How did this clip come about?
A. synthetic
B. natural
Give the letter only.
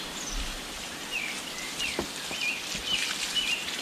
B